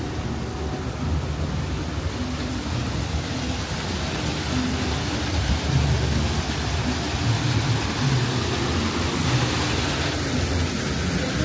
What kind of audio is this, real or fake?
real